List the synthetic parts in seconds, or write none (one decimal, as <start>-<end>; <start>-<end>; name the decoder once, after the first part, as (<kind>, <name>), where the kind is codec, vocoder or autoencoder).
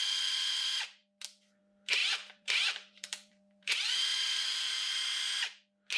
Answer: 2.0-4.4 (vocoder, BigVGAN v2)